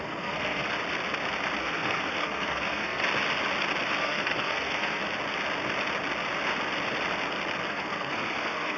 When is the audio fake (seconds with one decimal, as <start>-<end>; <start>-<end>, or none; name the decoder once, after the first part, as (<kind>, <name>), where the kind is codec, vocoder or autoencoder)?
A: 0.0-0.6 (codec, SNAC); 1.6-3.0; 4.0-5.0; 7.7-8.8